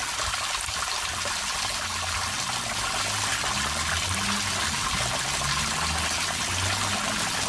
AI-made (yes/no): no